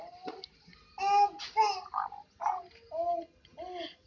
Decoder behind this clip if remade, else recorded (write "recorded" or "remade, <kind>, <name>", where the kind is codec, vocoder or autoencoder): recorded